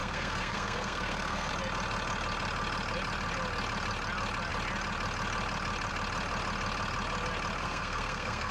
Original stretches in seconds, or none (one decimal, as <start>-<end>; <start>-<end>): 1.5-7.6